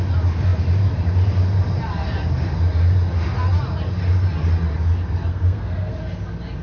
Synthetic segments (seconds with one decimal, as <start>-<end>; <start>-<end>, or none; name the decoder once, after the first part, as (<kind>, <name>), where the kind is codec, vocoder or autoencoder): 5.3-5.9 (codec, SNAC)